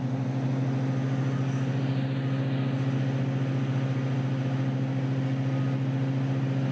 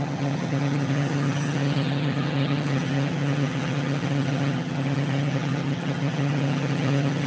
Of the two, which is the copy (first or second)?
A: second